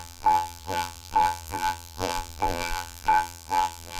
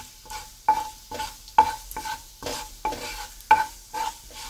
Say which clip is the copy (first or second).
first